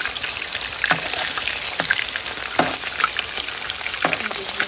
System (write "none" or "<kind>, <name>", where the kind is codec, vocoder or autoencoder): none